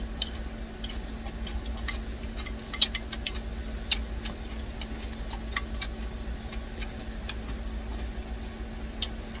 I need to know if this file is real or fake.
real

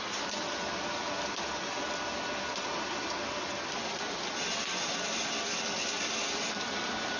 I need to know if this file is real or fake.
real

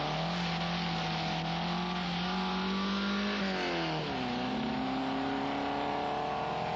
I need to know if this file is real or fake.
real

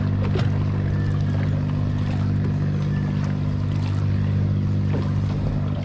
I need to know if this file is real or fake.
real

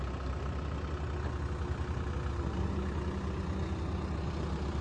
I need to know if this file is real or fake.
real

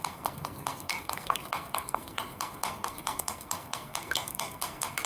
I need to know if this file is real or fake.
fake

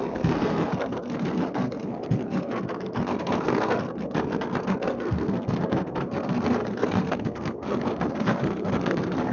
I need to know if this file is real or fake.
fake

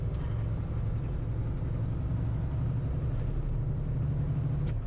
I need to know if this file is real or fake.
real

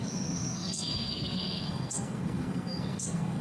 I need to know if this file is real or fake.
fake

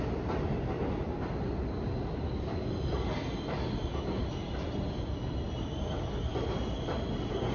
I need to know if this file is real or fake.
real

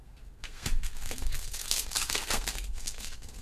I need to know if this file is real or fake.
fake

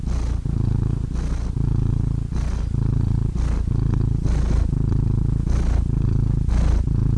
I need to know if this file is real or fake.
real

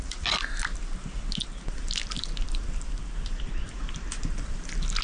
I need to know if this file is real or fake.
real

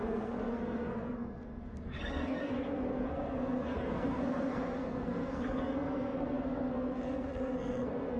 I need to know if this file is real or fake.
fake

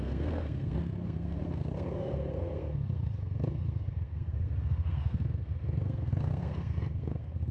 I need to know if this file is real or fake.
fake